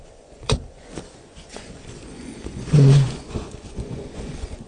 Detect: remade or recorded remade